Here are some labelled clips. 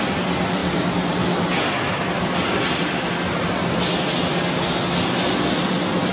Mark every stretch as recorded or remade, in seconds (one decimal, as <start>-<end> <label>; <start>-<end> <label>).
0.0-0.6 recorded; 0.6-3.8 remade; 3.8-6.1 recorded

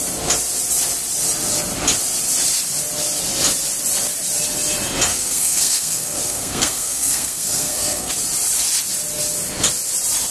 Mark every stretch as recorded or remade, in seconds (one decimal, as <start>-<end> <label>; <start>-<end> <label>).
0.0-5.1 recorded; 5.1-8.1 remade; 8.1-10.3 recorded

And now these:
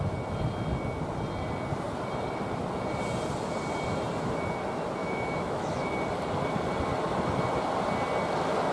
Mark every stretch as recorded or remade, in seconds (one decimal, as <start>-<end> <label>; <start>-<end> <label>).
0.0-5.0 recorded; 5.0-5.9 remade; 5.9-8.7 recorded

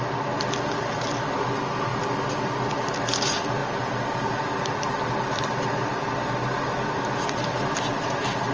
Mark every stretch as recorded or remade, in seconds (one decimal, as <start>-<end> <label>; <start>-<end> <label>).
0.0-1.9 recorded; 1.9-2.5 remade; 2.5-3.6 recorded; 3.6-8.5 remade

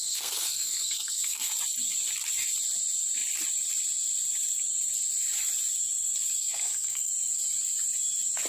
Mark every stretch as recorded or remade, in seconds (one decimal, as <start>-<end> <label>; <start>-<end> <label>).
0.0-1.5 remade; 1.5-6.4 recorded; 6.4-7.1 remade; 7.1-8.5 recorded

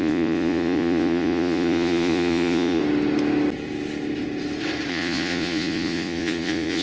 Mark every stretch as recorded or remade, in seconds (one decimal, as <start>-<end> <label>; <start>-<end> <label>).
0.0-2.8 remade; 2.8-4.9 recorded; 4.9-6.8 remade

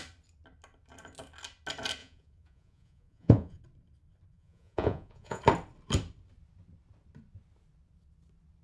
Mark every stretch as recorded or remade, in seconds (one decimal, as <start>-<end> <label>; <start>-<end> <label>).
0.0-2.0 recorded; 2.0-3.6 remade; 3.6-4.3 recorded; 4.3-5.4 remade; 5.4-8.6 recorded

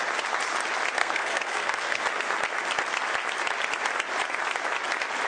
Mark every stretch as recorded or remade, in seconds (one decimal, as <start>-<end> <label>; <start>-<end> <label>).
0.0-1.0 recorded; 1.0-2.0 remade; 2.0-5.3 recorded